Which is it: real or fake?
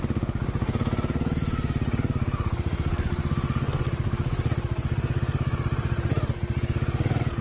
real